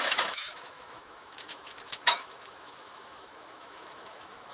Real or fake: fake